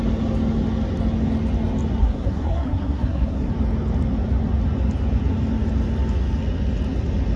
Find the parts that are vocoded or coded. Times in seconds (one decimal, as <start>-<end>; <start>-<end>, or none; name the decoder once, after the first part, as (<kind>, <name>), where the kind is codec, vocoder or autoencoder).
2.0-3.5 (codec, SNAC)